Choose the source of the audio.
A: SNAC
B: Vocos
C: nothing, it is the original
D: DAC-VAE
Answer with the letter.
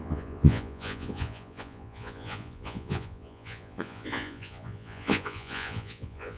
B